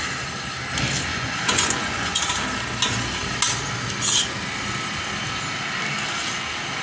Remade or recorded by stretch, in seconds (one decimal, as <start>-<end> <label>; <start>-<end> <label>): 0.0-1.1 recorded; 1.1-2.2 remade; 2.2-6.8 recorded